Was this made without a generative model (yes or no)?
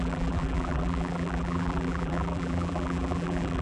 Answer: no